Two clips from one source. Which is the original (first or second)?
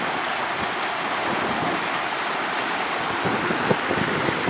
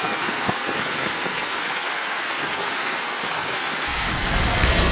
first